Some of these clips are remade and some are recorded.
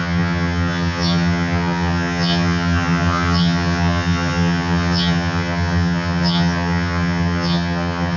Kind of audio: remade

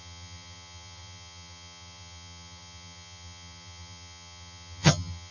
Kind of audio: remade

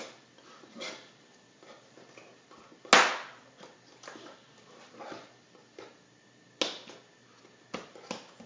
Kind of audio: recorded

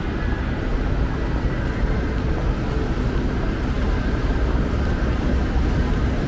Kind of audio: recorded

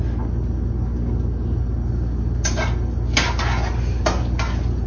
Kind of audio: recorded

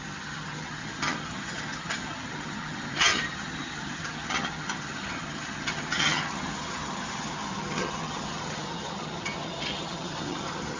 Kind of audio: remade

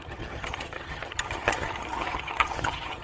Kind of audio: remade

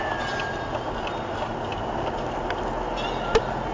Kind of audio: recorded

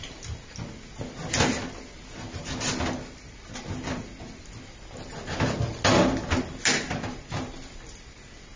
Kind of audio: recorded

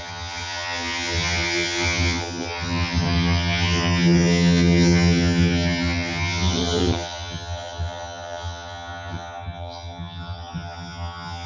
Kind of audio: remade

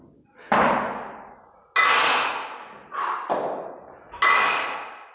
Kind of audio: recorded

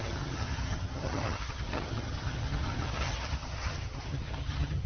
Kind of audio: remade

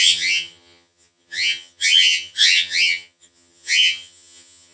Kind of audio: remade